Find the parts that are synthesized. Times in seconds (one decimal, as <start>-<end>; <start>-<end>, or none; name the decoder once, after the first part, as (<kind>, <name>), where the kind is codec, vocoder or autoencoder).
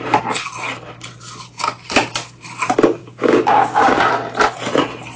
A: 3.0-4.1 (codec, DAC)